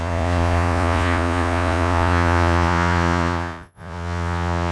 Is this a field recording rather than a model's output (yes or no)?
no